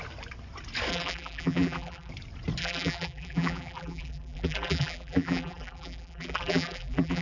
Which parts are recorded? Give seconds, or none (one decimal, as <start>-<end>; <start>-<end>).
0.0-0.9; 2.1-2.6